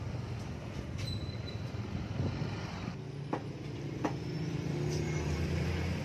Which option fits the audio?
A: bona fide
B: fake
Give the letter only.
A